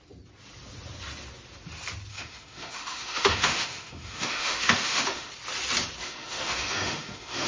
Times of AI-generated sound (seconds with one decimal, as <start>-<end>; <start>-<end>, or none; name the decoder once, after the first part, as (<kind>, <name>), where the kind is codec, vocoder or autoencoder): 2.1-5.3 (autoencoder, DAC-VAE); 6.0-7.5